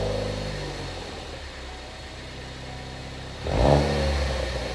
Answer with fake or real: real